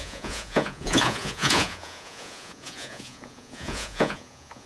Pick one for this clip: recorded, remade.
remade